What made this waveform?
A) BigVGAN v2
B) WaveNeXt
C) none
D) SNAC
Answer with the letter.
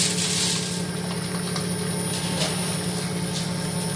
C